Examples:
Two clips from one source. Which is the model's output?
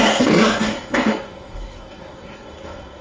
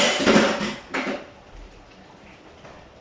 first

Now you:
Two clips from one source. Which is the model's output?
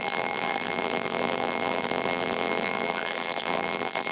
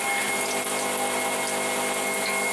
first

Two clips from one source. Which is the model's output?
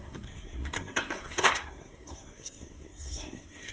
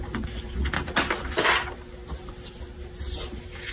first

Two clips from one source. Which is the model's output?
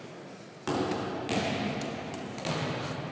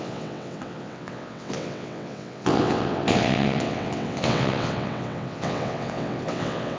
second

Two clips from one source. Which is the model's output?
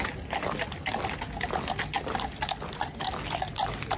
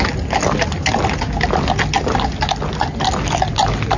first